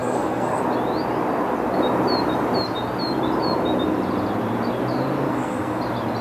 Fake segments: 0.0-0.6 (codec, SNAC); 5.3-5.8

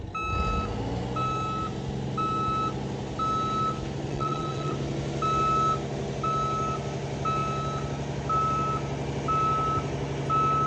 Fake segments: 4.1-4.7 (vocoder, WaveNeXt)

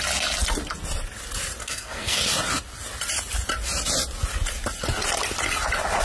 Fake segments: 1.6-2.2 (codec, SNAC)

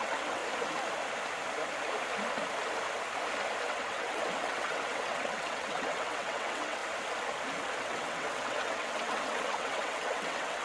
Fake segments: 0.0-0.4 (vocoder, WaveNeXt); 3.6-6.8; 7.8-10.6

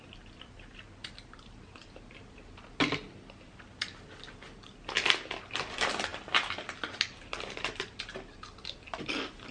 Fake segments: none

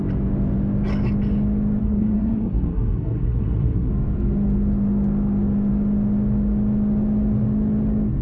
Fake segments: 1.8-3.9 (codec, SNAC)

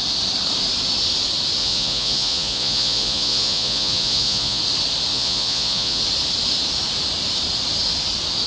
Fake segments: 1.6-4.6 (vocoder, Vocos); 5.1-6.0

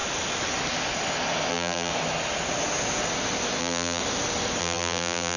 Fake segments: 1.5-1.9 (vocoder, BigVGAN v2); 3.6-4.0; 4.6-5.4